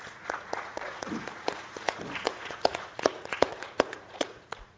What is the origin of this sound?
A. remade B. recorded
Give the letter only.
A